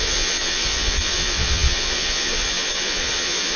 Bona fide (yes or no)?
no